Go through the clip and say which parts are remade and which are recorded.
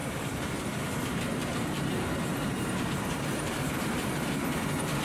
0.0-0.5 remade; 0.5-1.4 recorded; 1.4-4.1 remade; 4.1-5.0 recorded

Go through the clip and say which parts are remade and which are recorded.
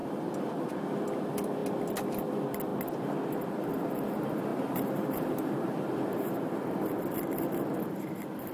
0.0-0.7 remade; 0.7-4.5 recorded; 4.5-6.3 remade; 6.3-8.5 recorded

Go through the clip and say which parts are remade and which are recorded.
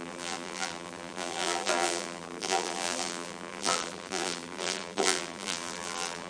0.0-6.3 remade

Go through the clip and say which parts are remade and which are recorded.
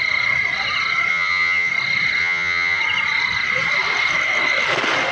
0.0-1.1 recorded; 1.1-1.7 remade; 1.7-2.2 recorded; 2.2-2.8 remade; 2.8-5.1 recorded